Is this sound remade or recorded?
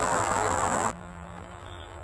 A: remade